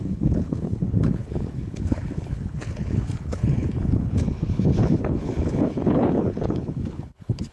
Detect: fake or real fake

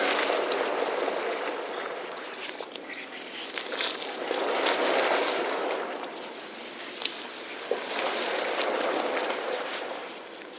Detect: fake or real real